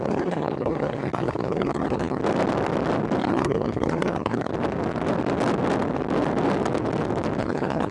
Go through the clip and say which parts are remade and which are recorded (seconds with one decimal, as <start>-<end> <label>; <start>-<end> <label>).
0.0-2.2 remade; 2.2-3.2 recorded; 3.2-4.5 remade; 4.5-7.4 recorded; 7.4-7.9 remade